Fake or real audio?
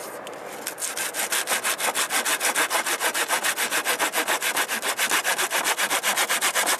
real